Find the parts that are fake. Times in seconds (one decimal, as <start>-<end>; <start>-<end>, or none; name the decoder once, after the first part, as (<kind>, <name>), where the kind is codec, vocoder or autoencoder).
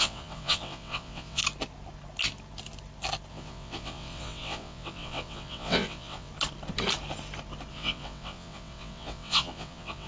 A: 0.0-1.4 (vocoder, WaveNeXt); 3.3-6.3; 7.7-10.1